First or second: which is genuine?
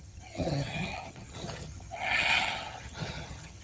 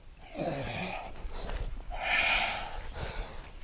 second